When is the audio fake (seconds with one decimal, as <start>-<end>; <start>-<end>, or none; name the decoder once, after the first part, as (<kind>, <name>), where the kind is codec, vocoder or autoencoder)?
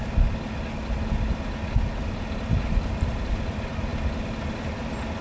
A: 0.0-0.5 (vocoder, BigVGAN v2); 3.3-3.9